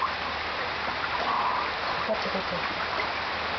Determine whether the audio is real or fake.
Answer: real